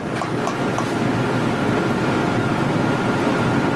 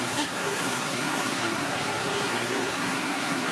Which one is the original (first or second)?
first